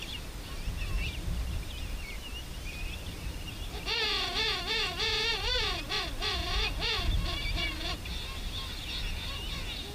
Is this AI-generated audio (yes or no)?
no